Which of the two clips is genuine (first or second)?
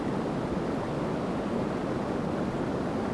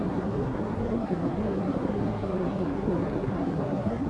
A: first